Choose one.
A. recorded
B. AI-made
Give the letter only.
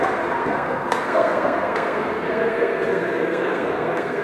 B